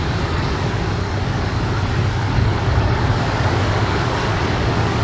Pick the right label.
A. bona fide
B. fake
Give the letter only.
B